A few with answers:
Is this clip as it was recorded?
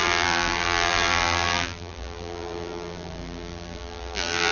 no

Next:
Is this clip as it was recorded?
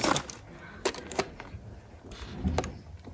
yes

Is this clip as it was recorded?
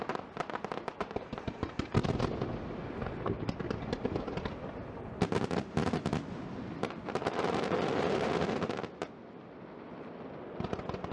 yes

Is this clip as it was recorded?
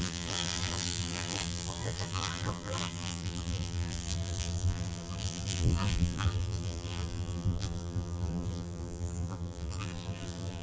no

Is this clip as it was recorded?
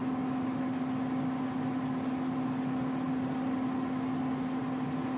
yes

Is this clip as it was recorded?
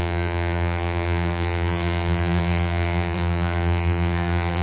no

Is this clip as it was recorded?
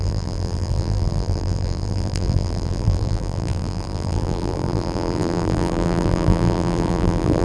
no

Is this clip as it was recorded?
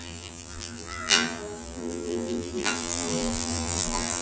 no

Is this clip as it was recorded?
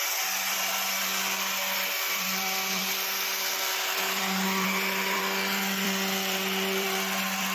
no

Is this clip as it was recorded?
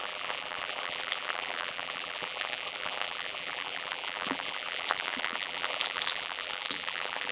no